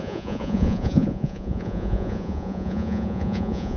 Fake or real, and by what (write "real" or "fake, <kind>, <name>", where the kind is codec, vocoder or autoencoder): fake, vocoder, Vocos